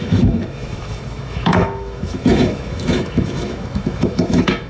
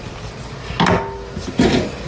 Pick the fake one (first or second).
first